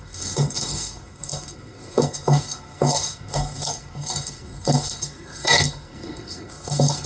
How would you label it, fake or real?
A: fake